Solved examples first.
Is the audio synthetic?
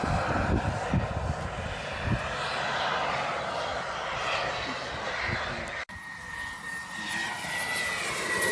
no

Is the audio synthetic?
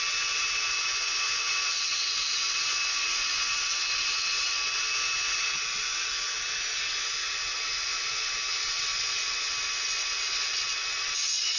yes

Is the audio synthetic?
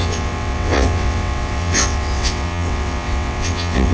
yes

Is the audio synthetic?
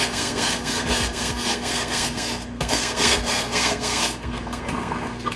yes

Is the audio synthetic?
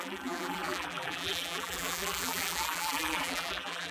yes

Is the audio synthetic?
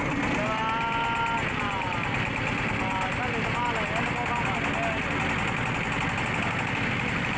no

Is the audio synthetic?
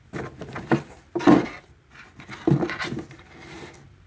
no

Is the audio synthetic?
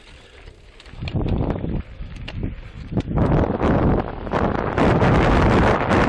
no